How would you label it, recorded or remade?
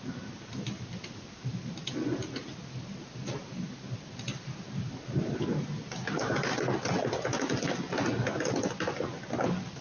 recorded